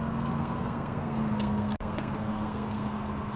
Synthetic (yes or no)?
yes